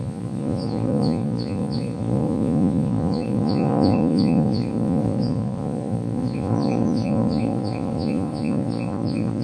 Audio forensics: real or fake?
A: fake